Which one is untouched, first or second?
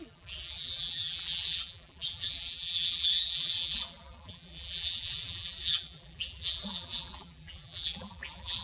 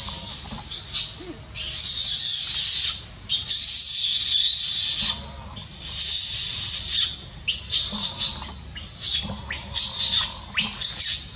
second